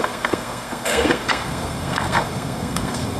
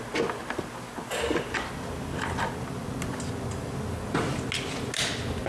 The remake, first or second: first